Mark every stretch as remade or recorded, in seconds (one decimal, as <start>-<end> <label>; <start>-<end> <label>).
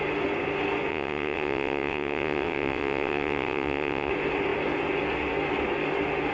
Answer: 0.0-0.9 recorded; 0.9-4.1 remade; 4.1-6.3 recorded